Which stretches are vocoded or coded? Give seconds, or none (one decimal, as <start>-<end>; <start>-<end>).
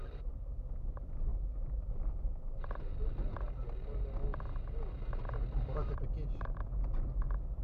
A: 0.0-2.9